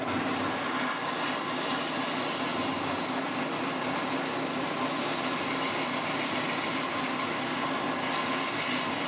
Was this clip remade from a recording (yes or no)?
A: no